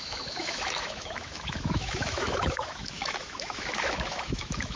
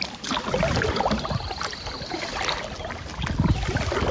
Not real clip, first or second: first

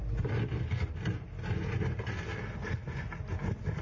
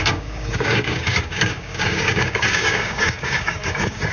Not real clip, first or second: second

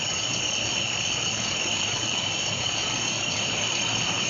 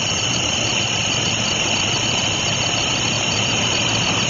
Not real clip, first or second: first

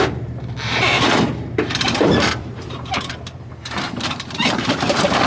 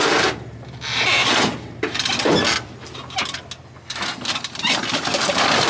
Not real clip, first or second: first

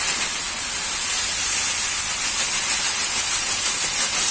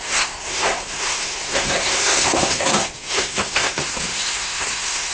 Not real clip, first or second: second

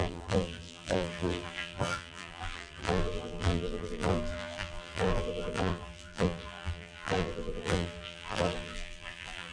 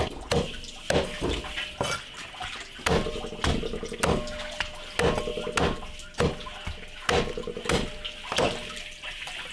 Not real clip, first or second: first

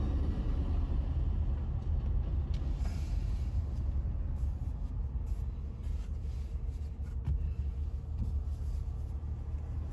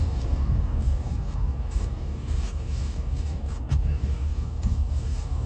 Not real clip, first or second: second